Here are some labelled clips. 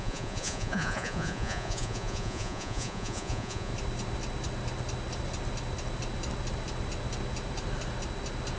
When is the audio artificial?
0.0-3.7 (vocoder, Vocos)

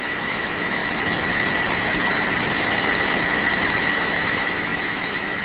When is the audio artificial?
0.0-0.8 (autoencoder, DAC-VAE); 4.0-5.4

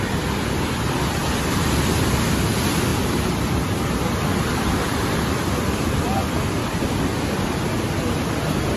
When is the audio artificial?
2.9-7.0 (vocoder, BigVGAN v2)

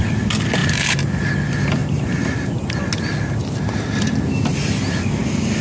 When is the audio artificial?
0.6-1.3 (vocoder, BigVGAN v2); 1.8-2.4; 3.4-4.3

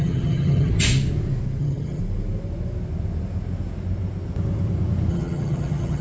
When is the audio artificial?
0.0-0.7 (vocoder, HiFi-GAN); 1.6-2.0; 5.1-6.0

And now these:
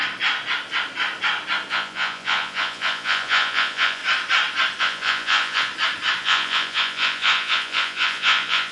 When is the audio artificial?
1.7-4.0 (vocoder, Vocos); 4.8-5.7; 6.2-8.7

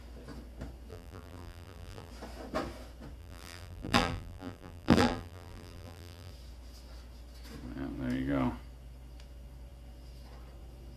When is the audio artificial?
0.9-2.1 (vocoder, BigVGAN v2); 3.2-6.3

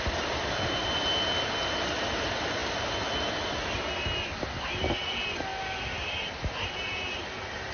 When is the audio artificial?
none